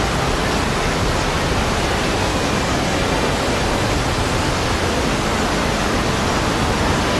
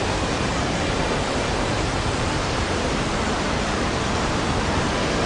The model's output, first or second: second